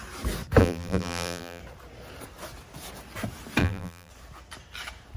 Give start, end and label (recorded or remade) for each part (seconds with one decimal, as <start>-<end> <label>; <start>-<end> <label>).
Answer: 0.0-0.6 recorded; 0.6-1.6 remade; 1.6-3.6 recorded; 3.6-4.1 remade; 4.1-5.2 recorded